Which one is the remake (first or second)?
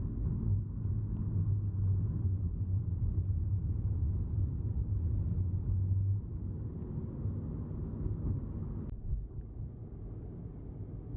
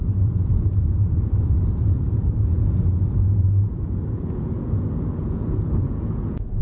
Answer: second